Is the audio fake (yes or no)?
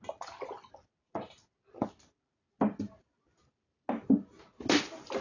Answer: no